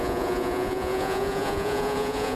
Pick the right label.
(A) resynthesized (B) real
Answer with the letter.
A